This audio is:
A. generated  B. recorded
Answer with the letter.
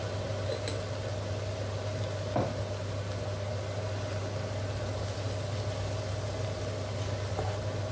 B